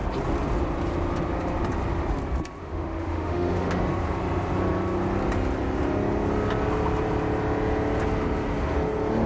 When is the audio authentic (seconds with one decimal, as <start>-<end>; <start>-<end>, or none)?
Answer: 0.0-2.6; 3.8-9.3